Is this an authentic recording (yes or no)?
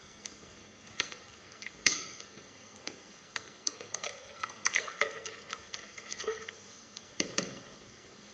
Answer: no